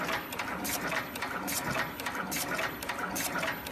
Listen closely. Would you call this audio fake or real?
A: real